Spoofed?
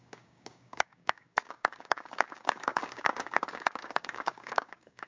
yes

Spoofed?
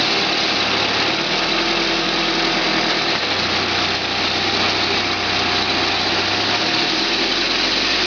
no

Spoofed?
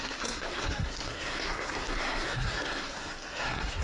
yes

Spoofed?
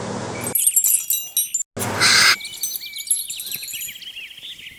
no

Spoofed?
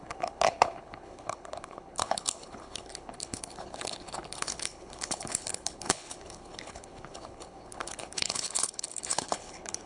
yes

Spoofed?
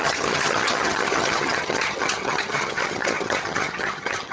yes